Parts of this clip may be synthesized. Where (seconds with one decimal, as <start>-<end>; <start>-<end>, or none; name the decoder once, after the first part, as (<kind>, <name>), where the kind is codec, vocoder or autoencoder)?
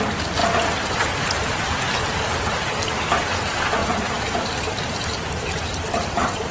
0.0-0.4 (vocoder, BigVGAN v2); 1.8-6.5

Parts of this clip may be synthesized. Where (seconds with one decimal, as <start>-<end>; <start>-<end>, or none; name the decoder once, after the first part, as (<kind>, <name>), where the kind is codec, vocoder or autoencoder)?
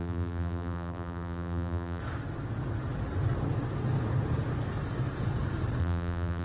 0.0-2.0 (vocoder, BigVGAN v2); 5.8-6.4